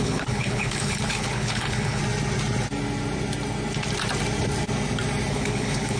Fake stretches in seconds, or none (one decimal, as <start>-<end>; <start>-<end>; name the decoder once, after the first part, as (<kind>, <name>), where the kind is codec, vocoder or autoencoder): 0.0-2.0 (codec, HILCodec); 5.3-6.0